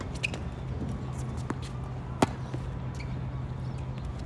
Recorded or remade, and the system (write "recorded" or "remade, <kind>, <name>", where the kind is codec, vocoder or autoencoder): recorded